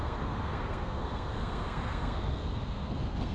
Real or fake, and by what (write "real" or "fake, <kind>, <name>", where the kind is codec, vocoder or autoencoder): fake, codec, SNAC